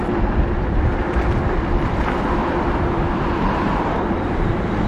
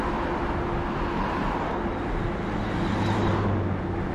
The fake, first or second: first